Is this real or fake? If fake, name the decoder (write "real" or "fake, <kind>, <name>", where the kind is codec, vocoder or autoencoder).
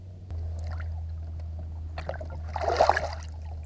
real